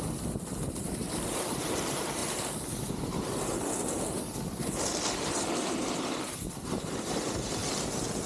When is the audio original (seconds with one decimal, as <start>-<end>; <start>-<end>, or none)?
2.2-6.6; 7.6-8.3